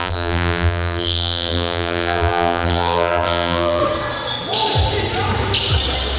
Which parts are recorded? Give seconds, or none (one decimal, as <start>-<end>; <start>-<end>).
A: 3.8-6.2